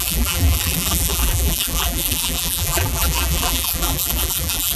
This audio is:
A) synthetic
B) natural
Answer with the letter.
A